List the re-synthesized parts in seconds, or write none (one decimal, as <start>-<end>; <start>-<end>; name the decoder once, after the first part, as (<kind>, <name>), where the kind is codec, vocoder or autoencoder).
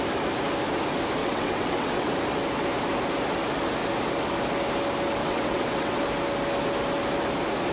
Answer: 1.2-2.1 (vocoder, WaveNeXt); 5.2-6.0